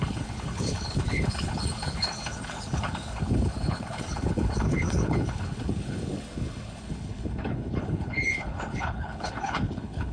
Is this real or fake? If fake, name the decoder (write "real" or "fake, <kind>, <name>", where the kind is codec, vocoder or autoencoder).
fake, codec, HILCodec